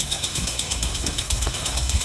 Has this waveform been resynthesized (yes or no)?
yes